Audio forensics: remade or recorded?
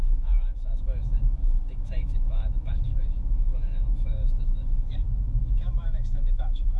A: remade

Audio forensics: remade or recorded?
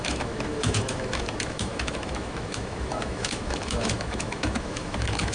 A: remade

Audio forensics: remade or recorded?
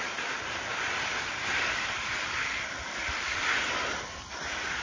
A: recorded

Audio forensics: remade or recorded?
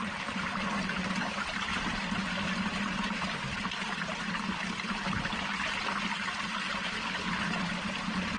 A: recorded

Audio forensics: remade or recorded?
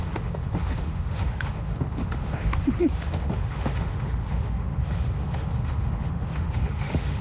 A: remade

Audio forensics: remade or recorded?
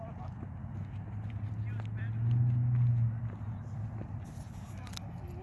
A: recorded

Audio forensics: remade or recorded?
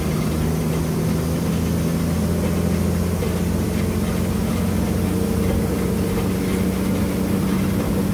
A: recorded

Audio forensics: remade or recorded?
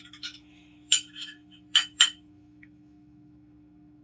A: remade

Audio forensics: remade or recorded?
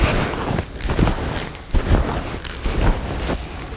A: recorded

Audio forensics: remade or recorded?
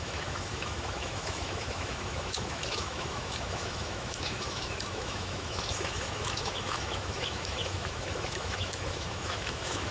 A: remade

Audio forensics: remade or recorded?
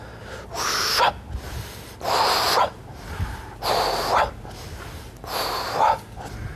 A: recorded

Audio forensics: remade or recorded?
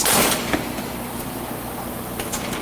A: recorded